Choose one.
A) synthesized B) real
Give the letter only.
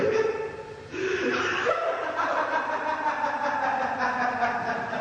A